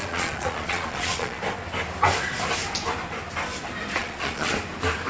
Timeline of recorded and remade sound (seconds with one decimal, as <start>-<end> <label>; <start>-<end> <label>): 0.0-1.4 remade; 1.4-4.0 recorded; 4.0-4.5 remade; 4.5-5.1 recorded